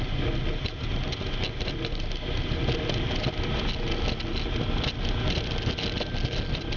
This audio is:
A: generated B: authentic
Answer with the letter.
B